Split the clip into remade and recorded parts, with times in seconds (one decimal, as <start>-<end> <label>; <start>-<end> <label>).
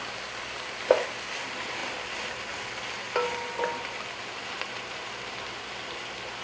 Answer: 0.0-6.4 recorded